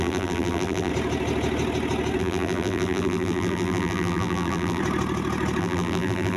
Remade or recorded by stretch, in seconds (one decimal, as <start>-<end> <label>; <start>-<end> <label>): 0.0-0.9 remade; 0.9-2.2 recorded; 2.2-4.8 remade; 4.8-5.6 recorded; 5.6-6.4 remade